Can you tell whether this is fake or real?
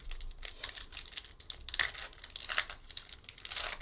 real